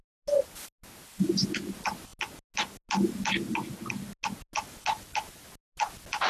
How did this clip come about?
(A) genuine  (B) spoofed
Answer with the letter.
A